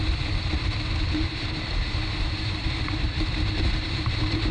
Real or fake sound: fake